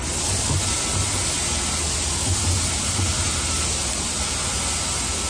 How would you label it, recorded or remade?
recorded